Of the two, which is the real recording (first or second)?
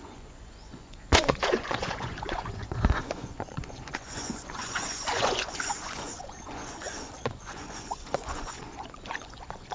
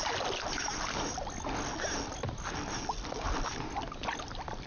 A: second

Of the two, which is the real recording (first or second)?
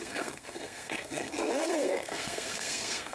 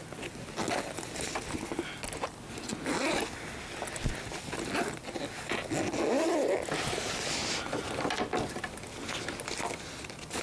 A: second